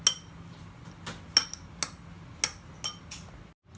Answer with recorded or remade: recorded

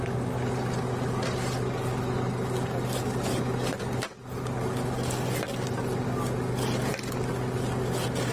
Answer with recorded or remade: recorded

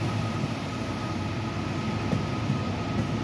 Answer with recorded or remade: recorded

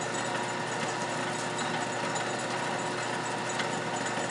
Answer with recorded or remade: recorded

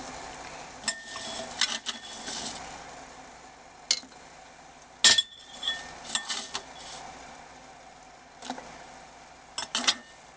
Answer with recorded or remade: recorded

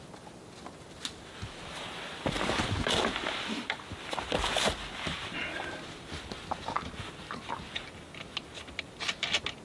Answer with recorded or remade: recorded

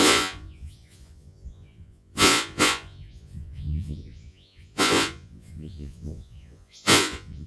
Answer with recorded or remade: remade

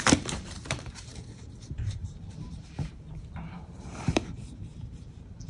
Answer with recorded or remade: remade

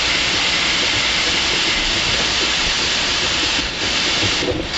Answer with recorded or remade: recorded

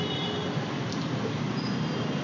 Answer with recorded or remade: recorded